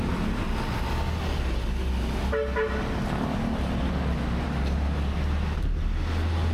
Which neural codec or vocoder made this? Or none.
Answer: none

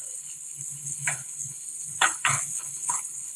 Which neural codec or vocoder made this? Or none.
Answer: codec, HILCodec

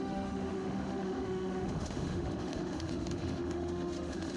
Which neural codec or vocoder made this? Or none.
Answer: autoencoder, DAC-VAE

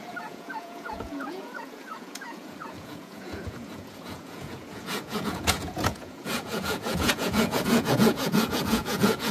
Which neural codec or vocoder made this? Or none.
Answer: vocoder, Vocos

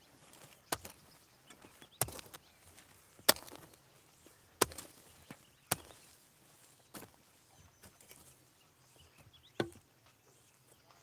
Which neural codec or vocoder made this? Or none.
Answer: none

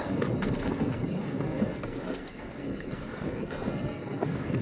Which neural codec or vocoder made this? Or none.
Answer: codec, SNAC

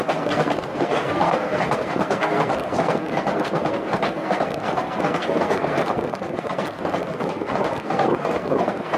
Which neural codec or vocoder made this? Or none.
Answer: codec, SNAC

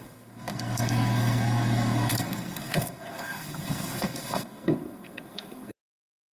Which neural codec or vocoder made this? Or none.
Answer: codec, SNAC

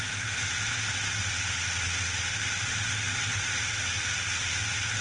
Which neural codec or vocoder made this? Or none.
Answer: none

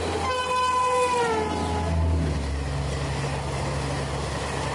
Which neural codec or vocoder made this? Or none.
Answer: none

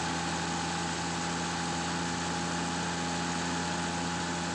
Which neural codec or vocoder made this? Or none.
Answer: none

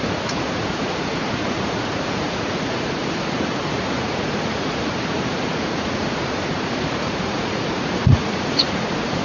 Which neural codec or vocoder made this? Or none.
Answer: vocoder, Vocos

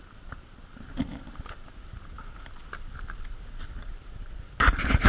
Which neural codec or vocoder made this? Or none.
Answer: none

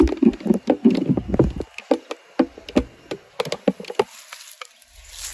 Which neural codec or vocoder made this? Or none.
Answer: none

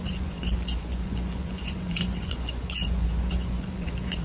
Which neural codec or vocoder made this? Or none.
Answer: vocoder, Vocos